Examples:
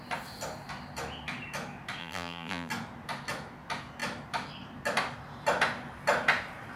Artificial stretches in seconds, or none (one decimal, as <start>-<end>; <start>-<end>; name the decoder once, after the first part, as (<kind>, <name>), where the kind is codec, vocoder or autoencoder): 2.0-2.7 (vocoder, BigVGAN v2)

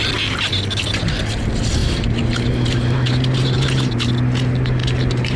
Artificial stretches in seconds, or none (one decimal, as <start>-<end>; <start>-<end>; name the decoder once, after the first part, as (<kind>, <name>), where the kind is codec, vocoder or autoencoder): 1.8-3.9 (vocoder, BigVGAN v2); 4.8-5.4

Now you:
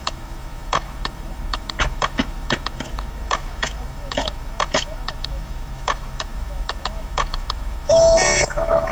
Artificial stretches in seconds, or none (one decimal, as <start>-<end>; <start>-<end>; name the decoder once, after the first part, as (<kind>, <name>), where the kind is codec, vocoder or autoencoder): 0.0-8.9 (autoencoder, DAC-VAE)

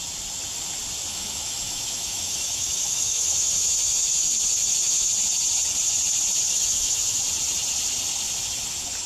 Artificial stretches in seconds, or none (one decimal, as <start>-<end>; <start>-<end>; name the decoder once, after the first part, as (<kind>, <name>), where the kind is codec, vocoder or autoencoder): 1.1-5.1 (autoencoder, DAC-VAE); 6.5-7.2